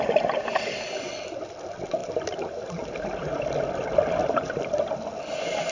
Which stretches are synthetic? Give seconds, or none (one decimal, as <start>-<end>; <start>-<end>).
none

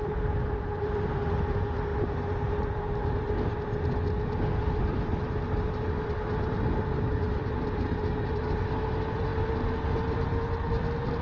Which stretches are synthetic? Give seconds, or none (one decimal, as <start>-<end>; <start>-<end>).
none

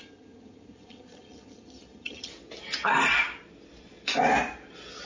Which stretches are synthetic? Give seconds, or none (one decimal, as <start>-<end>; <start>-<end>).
0.0-2.3

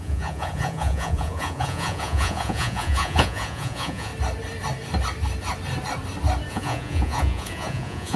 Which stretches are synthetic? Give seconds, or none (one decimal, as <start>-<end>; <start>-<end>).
0.0-4.1; 6.5-8.2